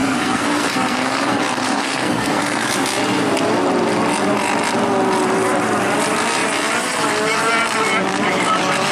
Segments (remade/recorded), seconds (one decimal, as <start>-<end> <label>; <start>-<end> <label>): 0.0-2.7 remade; 2.7-8.9 recorded